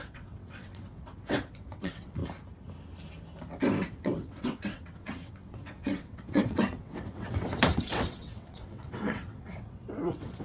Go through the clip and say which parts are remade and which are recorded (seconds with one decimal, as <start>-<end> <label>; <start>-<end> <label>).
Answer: 0.0-2.2 remade; 2.2-3.9 recorded; 3.9-10.4 remade